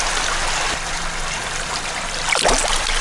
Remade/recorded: recorded